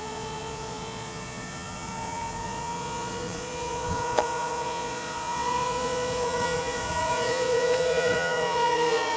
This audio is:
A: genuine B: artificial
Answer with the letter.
B